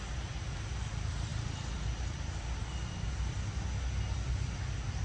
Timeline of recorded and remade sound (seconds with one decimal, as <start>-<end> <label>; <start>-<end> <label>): 0.0-5.0 recorded